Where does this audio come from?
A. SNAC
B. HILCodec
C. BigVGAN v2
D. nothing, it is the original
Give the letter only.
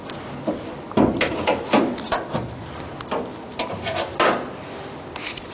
D